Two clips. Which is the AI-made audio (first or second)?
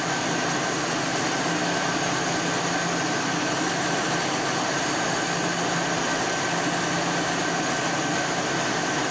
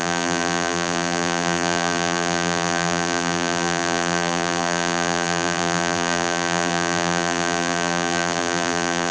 second